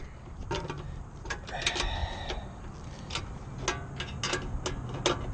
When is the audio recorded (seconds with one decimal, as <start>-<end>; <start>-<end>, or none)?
0.0-5.3